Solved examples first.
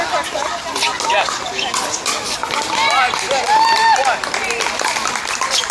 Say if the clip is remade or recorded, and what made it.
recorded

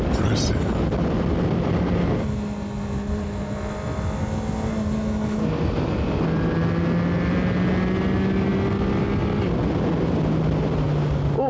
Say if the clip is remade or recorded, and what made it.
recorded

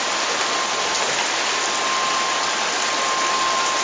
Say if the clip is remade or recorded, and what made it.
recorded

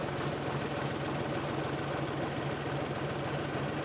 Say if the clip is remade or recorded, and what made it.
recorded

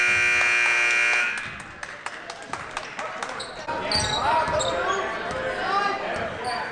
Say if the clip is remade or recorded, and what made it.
recorded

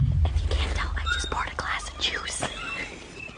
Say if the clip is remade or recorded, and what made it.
recorded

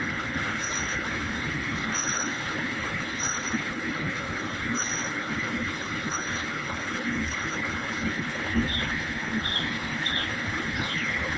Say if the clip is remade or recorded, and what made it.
remade, codec, HILCodec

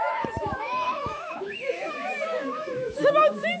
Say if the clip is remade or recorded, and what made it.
remade, autoencoder, DAC-VAE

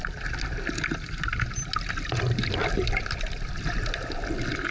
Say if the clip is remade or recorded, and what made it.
recorded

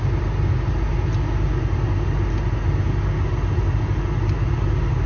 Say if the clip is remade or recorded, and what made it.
recorded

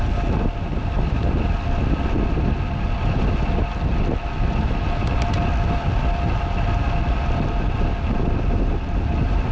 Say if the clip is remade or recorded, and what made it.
recorded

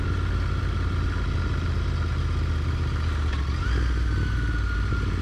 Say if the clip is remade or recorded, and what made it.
recorded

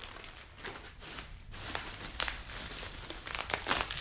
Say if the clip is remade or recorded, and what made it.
remade, vocoder, BigVGAN v2